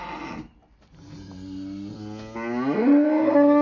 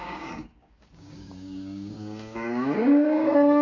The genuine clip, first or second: first